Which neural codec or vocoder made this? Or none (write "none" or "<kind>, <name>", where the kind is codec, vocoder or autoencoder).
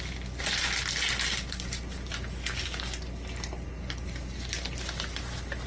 none